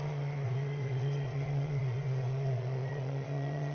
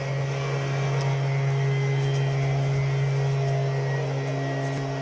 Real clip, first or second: second